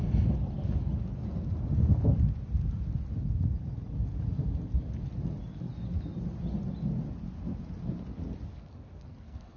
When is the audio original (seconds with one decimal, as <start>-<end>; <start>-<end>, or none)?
0.0-8.5